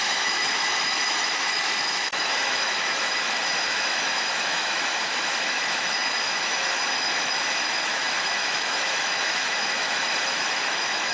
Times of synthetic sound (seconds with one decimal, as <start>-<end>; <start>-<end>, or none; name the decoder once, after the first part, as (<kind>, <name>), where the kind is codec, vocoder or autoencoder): 0.0-11.1 (autoencoder, DAC-VAE)